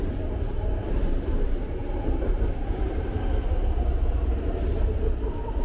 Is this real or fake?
fake